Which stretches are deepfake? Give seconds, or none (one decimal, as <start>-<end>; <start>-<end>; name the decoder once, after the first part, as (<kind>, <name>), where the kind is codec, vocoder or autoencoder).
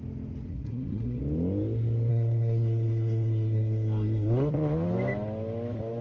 0.5-1.2 (codec, SNAC); 2.1-4.5